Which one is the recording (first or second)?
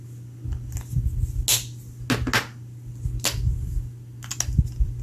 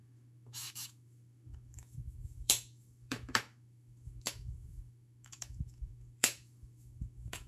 first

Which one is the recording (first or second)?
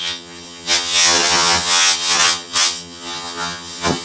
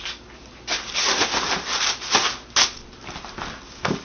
second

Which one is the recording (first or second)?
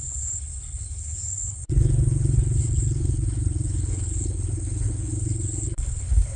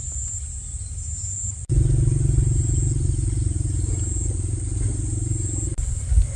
second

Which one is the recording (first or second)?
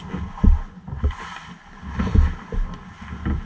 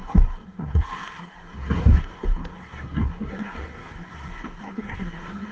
first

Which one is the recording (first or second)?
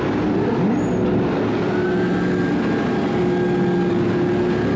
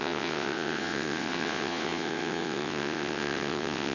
first